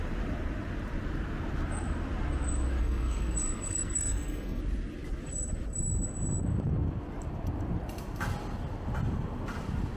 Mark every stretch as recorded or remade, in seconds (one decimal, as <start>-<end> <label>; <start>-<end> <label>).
0.0-2.8 recorded; 2.8-4.6 remade; 4.6-10.0 recorded